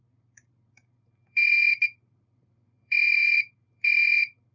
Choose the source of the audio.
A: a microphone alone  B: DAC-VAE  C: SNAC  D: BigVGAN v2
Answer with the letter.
D